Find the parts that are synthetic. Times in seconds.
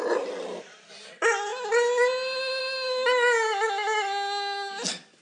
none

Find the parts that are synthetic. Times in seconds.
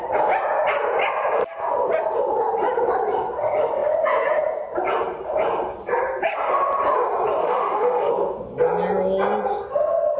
7.4-8.1 (autoencoder, DAC-VAE)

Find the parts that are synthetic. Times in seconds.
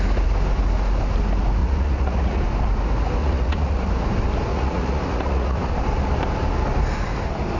1.6-2.4 (vocoder, Vocos); 3.2-3.9; 4.5-5.7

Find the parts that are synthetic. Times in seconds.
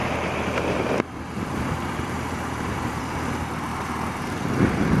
0.0-3.0 (vocoder, BigVGAN v2); 3.7-4.6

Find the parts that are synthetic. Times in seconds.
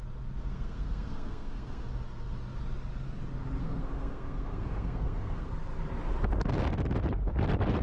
0.5-1.9 (codec, SNAC); 3.6-5.5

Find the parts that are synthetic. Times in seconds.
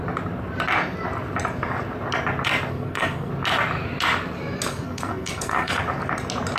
2.7-3.3 (codec, SNAC); 4.7-5.8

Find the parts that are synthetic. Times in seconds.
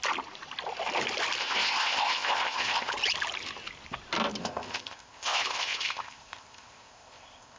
1.4-2.9 (codec, ZipCodec); 4.4-7.6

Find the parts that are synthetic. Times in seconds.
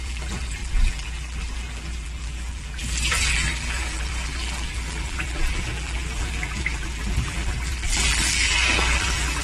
0.0-9.4 (vocoder, BigVGAN v2)